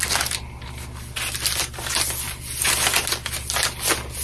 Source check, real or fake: real